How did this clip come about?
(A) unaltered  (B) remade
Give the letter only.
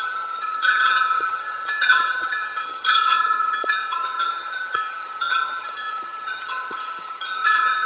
B